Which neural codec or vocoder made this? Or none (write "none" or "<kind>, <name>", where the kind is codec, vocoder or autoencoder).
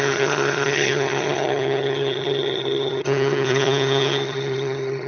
vocoder, HiFi-GAN